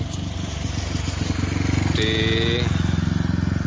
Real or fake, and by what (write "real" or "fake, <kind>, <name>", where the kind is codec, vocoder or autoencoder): real